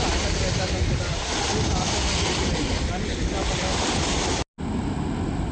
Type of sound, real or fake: real